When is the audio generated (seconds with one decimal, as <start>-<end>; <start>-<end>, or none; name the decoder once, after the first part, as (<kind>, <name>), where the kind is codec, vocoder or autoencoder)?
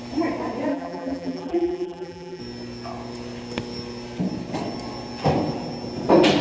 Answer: 0.7-2.4 (vocoder, BigVGAN v2)